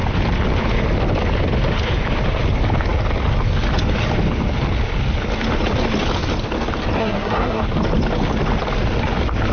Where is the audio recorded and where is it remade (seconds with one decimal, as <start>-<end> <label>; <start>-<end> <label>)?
0.0-7.0 recorded; 7.0-7.6 remade; 7.6-9.5 recorded